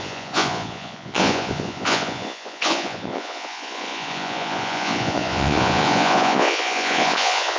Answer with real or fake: fake